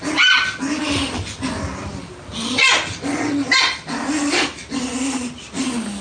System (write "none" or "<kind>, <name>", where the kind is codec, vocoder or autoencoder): none